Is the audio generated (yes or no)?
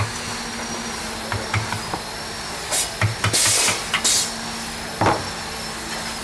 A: no